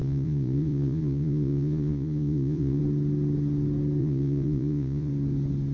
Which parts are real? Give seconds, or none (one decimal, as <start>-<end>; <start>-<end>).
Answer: 2.8-4.0; 5.1-5.7